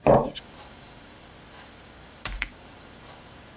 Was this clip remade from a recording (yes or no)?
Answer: yes